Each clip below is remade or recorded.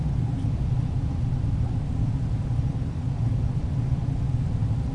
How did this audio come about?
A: recorded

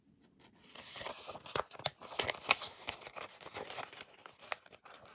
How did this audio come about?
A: recorded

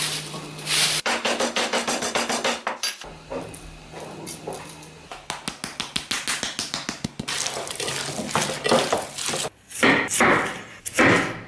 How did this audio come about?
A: recorded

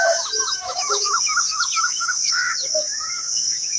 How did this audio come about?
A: remade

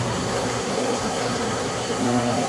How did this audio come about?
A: remade